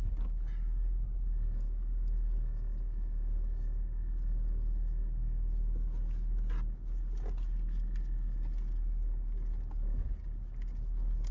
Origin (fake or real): real